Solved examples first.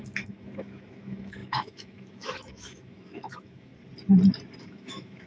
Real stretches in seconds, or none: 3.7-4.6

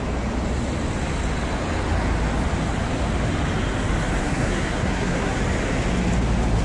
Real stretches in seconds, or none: 0.0-4.2; 5.4-6.6